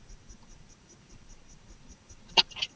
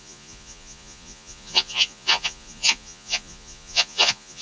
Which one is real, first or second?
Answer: first